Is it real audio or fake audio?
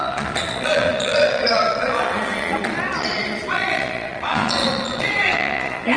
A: fake